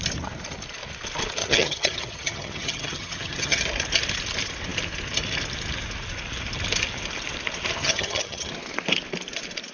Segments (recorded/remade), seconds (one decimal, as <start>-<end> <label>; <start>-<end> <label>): 0.0-1.4 recorded; 1.4-3.6 remade; 3.6-7.8 recorded; 7.8-8.5 remade; 8.5-9.7 recorded